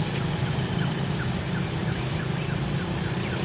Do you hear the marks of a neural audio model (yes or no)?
no